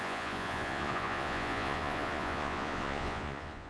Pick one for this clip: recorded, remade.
remade